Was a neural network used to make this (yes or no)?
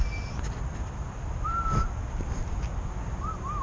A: no